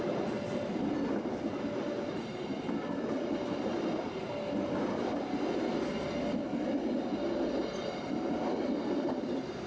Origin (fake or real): real